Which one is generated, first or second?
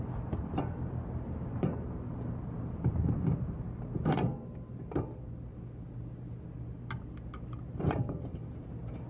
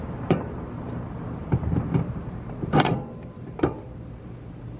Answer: second